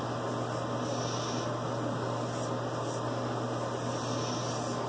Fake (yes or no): no